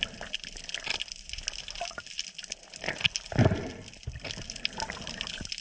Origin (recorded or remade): recorded